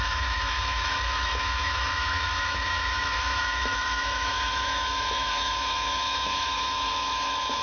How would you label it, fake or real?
fake